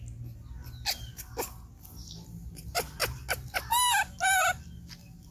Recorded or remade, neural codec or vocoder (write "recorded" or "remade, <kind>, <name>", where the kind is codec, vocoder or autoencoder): recorded